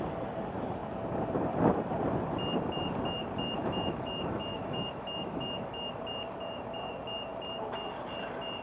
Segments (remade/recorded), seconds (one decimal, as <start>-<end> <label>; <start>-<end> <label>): 0.0-3.6 recorded; 3.6-6.0 remade; 6.0-8.6 recorded

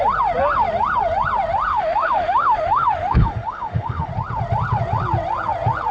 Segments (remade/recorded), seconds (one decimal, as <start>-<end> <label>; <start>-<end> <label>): 0.0-1.7 recorded; 1.7-4.1 remade; 4.1-5.9 recorded

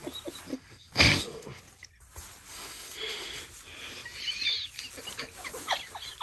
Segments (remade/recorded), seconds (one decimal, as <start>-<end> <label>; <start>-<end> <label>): 0.0-0.5 recorded; 0.5-1.6 remade; 1.6-2.5 recorded; 2.5-3.4 remade; 3.4-6.2 recorded

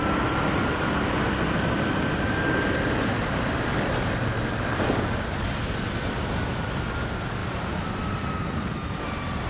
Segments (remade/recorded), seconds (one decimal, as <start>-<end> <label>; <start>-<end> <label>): 0.0-9.5 recorded